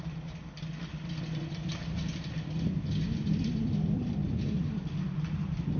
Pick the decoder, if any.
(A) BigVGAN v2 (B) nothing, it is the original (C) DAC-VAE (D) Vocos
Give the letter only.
B